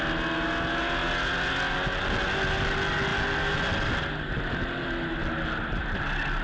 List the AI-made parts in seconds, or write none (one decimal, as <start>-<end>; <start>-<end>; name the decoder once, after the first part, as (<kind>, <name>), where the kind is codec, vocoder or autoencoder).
none